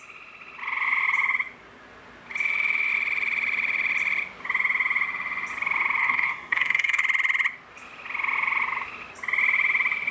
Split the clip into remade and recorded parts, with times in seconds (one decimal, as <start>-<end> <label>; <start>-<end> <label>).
0.0-6.0 recorded; 6.0-7.0 remade; 7.0-10.1 recorded